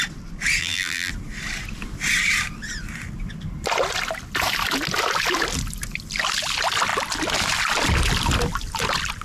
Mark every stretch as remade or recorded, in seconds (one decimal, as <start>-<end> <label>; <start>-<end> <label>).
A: 0.0-0.6 recorded; 0.6-1.1 remade; 1.1-9.2 recorded